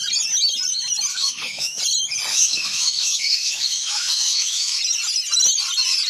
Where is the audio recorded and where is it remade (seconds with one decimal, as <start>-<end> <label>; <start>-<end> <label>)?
0.0-1.1 recorded; 1.1-1.8 remade; 1.8-2.3 recorded; 2.3-4.8 remade; 4.8-6.1 recorded

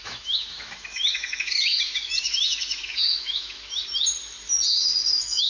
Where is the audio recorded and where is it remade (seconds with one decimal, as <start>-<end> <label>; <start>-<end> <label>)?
0.0-3.8 remade; 3.8-5.1 recorded; 5.1-5.5 remade

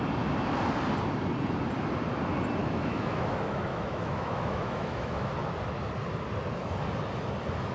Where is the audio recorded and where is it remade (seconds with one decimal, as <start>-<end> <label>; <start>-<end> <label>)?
0.0-2.6 recorded; 2.6-5.3 remade; 5.3-7.7 recorded

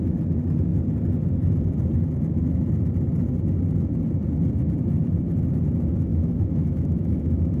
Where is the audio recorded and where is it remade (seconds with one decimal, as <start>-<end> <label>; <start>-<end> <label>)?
0.0-6.1 recorded; 6.1-7.6 remade

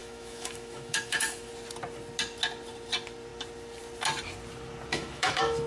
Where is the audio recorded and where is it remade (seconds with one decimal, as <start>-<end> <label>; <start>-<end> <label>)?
0.0-1.5 remade; 1.5-4.9 recorded; 4.9-5.7 remade

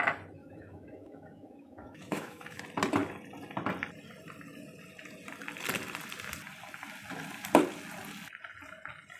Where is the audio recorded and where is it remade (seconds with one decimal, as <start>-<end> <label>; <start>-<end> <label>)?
0.0-0.4 recorded; 0.4-2.6 remade; 2.6-9.2 recorded